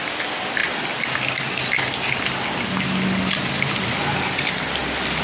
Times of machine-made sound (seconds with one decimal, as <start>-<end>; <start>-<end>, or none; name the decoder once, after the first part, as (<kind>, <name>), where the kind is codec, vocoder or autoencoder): none